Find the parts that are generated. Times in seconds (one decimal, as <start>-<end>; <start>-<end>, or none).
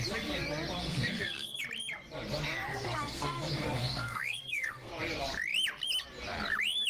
0.8-1.6; 2.7-4.9